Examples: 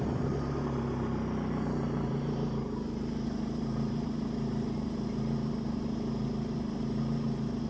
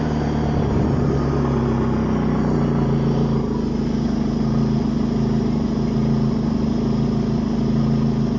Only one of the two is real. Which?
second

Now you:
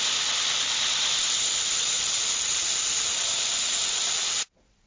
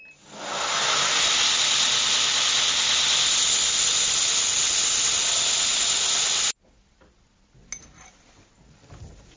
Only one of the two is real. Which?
second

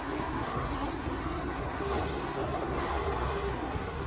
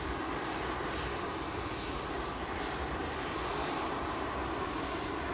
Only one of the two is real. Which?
second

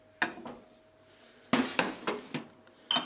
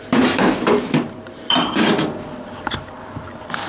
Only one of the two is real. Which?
first